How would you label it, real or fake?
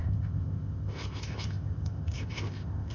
fake